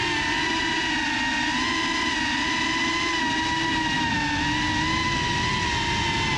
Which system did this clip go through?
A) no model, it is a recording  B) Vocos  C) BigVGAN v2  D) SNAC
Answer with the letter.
A